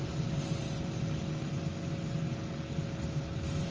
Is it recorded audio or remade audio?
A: recorded